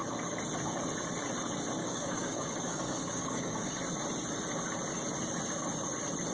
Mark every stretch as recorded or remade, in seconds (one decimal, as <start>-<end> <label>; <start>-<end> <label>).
0.0-1.8 recorded; 1.8-3.8 remade; 3.8-6.3 recorded